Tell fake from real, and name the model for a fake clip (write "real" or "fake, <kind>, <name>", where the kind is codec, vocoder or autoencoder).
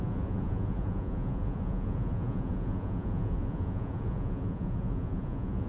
fake, vocoder, Vocos